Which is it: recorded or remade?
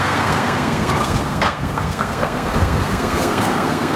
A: remade